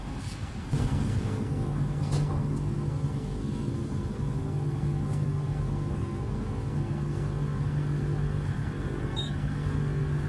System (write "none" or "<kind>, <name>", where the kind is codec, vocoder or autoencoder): codec, SNAC